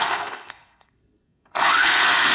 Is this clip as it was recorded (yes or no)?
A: no